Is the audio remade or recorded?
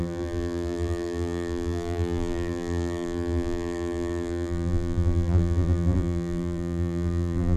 remade